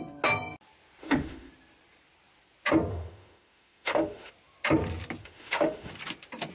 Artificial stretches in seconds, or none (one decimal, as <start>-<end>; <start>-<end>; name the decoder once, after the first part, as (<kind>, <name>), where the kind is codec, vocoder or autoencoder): 1.0-1.5 (autoencoder, DAC-VAE); 2.9-4.3; 5.2-5.9